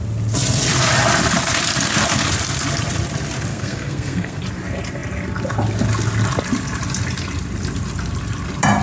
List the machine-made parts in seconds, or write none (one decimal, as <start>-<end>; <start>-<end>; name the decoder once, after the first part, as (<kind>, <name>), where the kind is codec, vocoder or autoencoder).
3.5-4.4 (codec, SNAC)

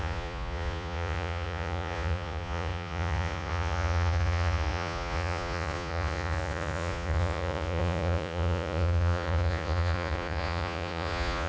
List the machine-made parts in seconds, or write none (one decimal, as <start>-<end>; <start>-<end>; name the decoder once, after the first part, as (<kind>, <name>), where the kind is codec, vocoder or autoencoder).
0.0-11.5 (vocoder, Vocos)

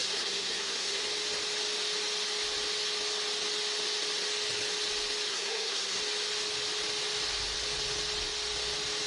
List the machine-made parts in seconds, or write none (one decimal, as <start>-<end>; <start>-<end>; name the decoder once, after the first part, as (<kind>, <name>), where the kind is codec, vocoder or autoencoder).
0.0-1.0 (codec, SNAC); 5.3-6.0

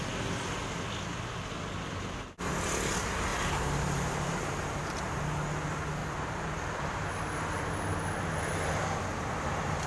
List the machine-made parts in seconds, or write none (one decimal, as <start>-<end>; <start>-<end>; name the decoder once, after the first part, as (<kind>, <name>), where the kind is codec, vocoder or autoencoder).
3.3-5.2 (vocoder, BigVGAN v2); 6.0-7.6

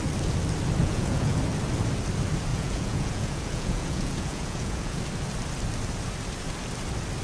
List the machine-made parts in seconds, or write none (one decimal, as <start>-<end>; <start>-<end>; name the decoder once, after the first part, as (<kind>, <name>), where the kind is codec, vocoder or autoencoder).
0.8-1.4 (vocoder, Vocos); 2.5-5.0

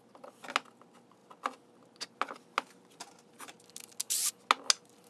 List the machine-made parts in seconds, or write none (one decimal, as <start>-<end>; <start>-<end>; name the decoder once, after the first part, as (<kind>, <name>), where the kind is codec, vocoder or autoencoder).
none

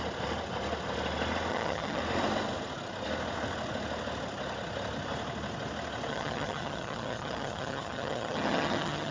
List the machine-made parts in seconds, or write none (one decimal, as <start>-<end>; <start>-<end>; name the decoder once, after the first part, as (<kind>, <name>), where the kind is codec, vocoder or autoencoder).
1.5-2.0 (vocoder, HiFi-GAN); 6.1-9.1